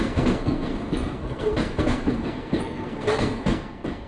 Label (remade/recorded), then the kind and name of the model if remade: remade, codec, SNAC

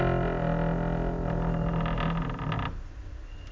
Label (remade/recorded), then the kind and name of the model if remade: recorded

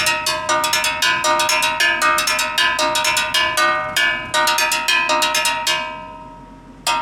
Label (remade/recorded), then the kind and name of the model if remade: recorded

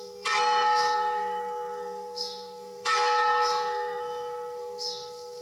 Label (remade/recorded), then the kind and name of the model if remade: remade, codec, SNAC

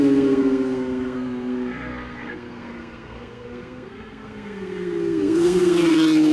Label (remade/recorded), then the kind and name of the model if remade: remade, codec, SNAC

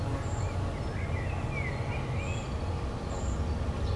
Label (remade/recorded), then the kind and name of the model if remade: recorded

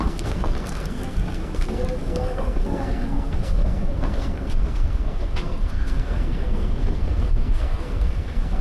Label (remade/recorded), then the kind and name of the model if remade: remade, codec, SNAC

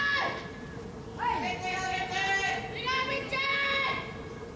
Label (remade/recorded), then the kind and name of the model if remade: recorded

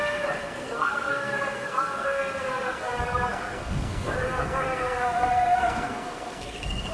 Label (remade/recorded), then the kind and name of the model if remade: remade, codec, SNAC